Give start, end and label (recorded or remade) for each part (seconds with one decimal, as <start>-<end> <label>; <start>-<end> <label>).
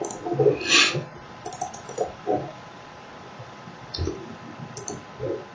0.0-1.1 recorded; 1.1-4.4 remade; 4.4-5.5 recorded